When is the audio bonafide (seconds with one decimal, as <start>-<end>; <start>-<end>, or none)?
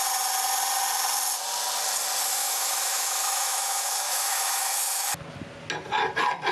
0.0-2.4; 5.1-6.5